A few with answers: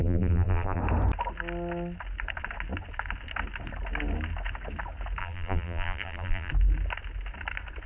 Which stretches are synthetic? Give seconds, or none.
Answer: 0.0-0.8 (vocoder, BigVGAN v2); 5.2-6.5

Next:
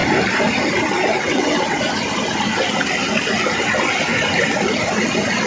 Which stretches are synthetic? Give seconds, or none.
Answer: 1.1-1.8 (vocoder, WaveNeXt)

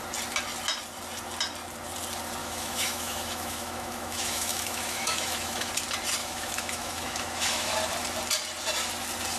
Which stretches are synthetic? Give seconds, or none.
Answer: 2.4-5.7 (autoencoder, DAC-VAE); 6.2-7.7

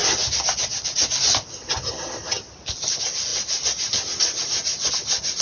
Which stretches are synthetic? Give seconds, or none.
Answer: none

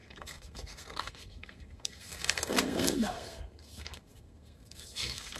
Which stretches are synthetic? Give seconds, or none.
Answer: 0.0-5.4 (codec, SNAC)

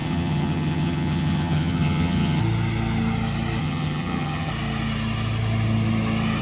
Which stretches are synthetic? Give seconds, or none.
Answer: 0.0-2.4 (vocoder, HiFi-GAN); 3.6-4.5